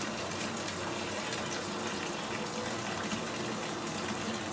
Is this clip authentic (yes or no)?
yes